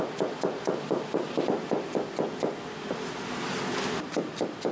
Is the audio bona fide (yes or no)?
yes